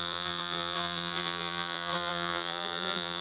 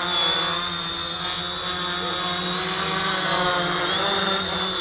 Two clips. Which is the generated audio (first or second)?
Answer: first